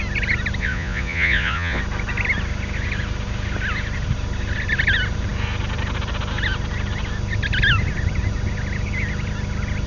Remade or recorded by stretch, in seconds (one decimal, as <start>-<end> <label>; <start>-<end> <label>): 0.0-0.6 recorded; 0.6-1.8 remade; 1.8-9.9 recorded